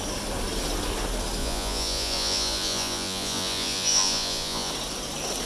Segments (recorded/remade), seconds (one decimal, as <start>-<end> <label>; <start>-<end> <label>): 0.0-1.4 recorded; 1.4-4.7 remade; 4.7-5.5 recorded